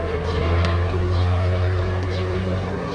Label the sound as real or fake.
fake